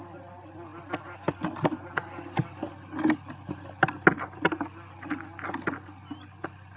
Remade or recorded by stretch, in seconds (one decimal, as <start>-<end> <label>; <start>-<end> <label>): 0.0-6.8 recorded